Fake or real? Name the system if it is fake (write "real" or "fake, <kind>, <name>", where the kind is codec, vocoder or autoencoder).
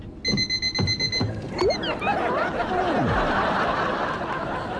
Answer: real